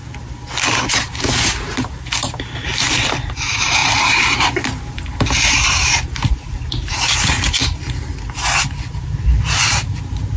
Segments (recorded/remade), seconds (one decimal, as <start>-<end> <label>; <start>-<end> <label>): 0.0-0.9 recorded; 0.9-7.6 remade; 7.6-8.9 recorded; 8.9-10.4 remade